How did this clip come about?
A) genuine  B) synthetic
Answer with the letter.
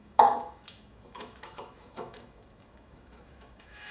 B